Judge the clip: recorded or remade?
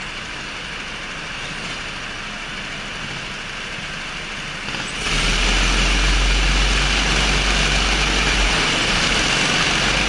recorded